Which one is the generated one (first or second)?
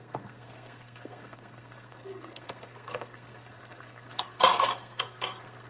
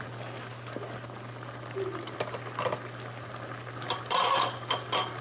first